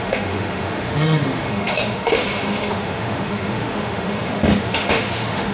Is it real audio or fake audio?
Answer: fake